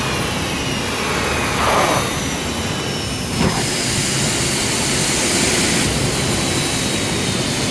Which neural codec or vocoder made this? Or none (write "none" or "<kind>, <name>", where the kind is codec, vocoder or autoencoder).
none